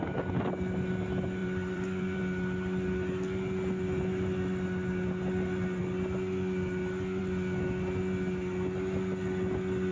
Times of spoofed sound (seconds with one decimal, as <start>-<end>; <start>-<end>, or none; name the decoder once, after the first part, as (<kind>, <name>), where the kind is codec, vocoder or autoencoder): 1.4-2.2 (vocoder, BigVGAN v2)